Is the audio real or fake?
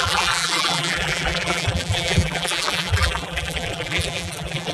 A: fake